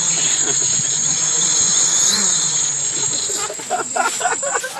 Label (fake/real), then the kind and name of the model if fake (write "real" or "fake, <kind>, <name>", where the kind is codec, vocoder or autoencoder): fake, vocoder, Vocos